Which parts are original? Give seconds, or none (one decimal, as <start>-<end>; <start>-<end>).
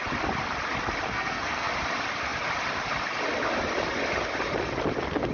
0.0-1.1; 1.7-5.3